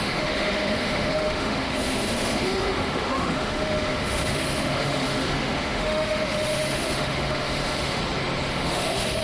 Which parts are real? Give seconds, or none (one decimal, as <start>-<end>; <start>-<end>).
8.0-8.5